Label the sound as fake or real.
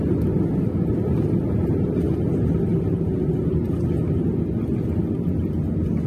real